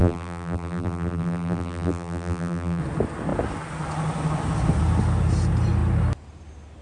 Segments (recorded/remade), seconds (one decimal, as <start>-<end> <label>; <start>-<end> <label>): 0.0-2.8 remade; 2.8-6.8 recorded